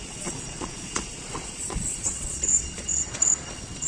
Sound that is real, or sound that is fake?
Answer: fake